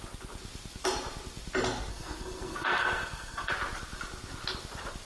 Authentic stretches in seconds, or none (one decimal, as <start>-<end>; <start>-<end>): 0.0-1.9; 3.5-5.1